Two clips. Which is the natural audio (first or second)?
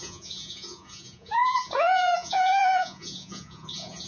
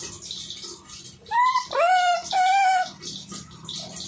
second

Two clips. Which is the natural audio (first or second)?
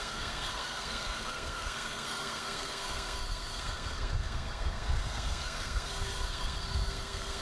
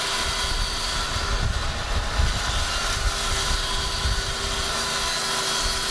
second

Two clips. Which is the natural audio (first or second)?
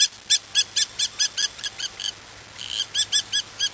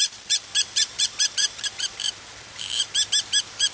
first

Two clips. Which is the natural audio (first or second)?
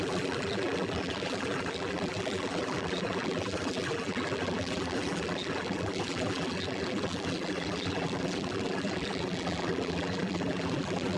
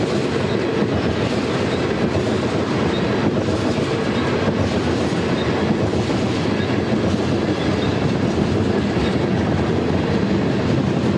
second